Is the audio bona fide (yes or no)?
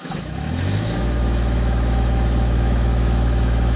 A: no